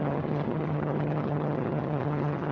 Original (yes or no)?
no